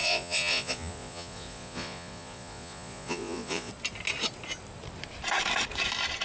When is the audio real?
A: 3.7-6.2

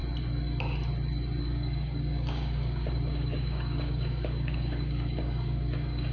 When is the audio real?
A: 0.0-1.4